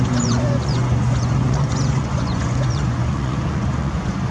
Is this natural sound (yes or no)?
no